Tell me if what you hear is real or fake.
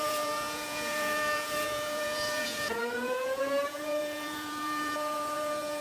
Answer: fake